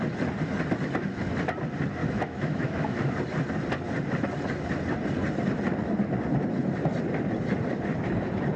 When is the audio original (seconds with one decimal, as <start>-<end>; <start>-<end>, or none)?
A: 0.0-2.0; 3.1-8.6

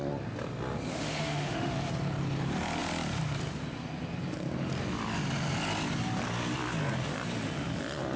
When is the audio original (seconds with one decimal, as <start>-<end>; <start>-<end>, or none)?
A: 0.0-0.9; 1.7-8.2

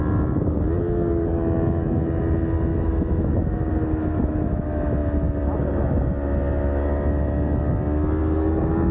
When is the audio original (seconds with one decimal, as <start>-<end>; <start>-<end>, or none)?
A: 0.0-2.7; 3.7-8.9

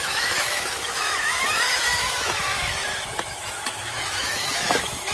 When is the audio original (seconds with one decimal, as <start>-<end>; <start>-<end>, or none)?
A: none

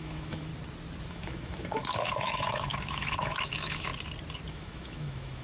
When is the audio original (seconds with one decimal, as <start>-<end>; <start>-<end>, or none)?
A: 0.5-1.1; 3.9-4.5

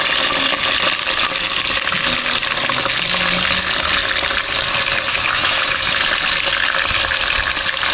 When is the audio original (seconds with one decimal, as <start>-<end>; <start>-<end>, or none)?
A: 0.0-5.1; 6.0-7.9

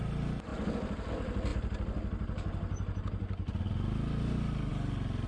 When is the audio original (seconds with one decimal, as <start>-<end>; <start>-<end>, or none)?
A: 0.0-5.3